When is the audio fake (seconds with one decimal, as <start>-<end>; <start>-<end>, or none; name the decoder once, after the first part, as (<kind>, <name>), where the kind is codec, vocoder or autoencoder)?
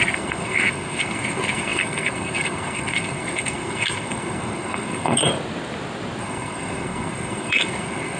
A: 0.0-5.3 (codec, SNAC); 6.2-8.2